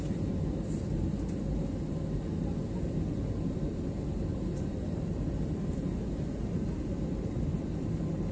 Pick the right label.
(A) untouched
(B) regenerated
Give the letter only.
A